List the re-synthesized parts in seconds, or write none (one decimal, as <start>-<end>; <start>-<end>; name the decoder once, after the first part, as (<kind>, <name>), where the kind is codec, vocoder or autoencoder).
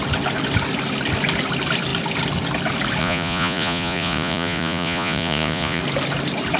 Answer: 3.0-5.8 (vocoder, Vocos)